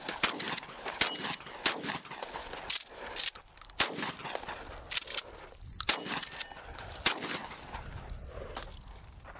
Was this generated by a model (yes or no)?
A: no